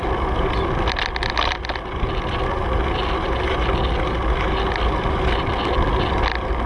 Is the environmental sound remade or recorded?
recorded